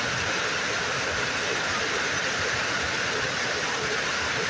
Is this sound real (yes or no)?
yes